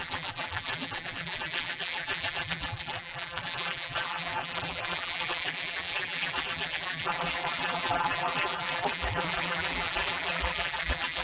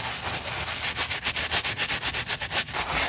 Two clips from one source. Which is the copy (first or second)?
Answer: first